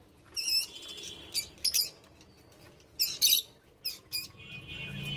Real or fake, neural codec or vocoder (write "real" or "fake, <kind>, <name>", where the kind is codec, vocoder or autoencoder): real